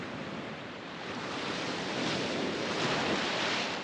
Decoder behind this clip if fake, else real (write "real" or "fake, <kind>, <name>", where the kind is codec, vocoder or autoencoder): real